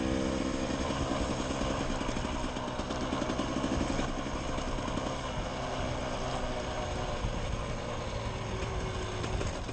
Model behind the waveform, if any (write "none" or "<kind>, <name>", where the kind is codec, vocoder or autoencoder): none